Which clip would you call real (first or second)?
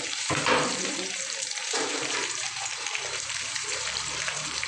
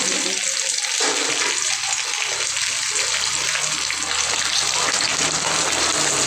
second